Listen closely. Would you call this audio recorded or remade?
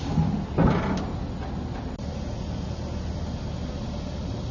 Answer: recorded